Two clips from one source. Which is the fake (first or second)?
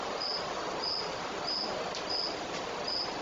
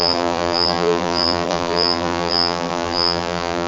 second